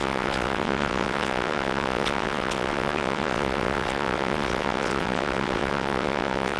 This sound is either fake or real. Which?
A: fake